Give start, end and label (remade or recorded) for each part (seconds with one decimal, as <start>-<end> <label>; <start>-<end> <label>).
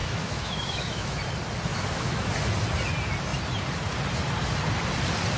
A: 0.0-1.2 remade; 1.2-1.7 recorded; 1.7-2.3 remade; 2.3-5.4 recorded